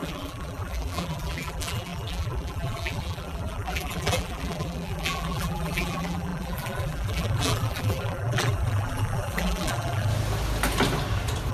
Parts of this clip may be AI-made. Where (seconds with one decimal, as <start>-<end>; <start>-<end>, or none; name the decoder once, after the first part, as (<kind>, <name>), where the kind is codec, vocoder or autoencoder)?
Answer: 0.0-10.1 (vocoder, BigVGAN v2)